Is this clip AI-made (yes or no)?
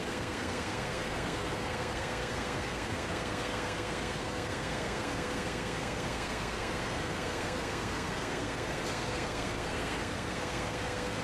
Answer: yes